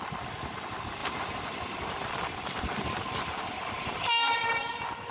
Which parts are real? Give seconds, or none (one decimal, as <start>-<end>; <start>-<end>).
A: 0.0-5.1